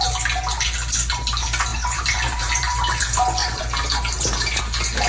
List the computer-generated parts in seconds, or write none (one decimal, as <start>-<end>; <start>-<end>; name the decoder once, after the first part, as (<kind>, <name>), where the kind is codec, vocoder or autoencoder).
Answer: 1.7-3.0 (vocoder, BigVGAN v2); 3.4-4.6